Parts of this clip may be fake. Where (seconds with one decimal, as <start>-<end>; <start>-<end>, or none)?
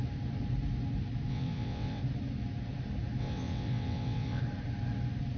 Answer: 1.3-2.0; 3.2-4.4